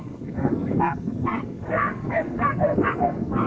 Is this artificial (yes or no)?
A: yes